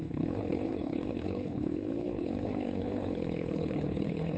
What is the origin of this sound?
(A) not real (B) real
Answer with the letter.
A